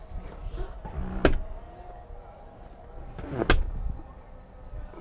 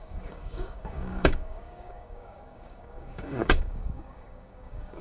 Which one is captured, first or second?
first